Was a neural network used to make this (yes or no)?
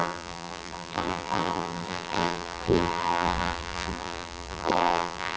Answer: yes